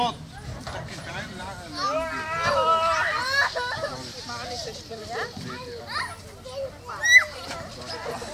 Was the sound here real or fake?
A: real